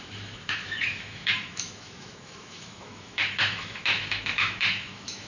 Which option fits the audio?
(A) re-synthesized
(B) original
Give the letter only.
A